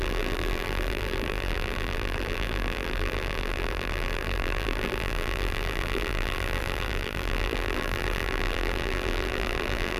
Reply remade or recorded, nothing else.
remade